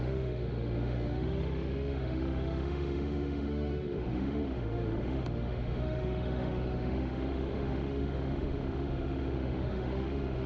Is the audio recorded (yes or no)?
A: no